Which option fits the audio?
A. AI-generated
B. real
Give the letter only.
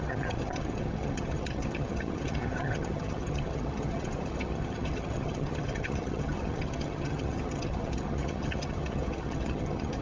A